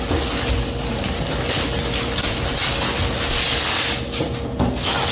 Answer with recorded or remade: recorded